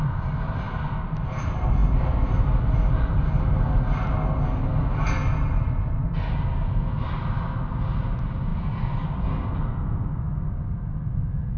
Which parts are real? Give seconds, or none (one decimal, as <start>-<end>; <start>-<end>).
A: 0.0-11.6